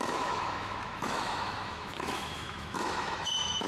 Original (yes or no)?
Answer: no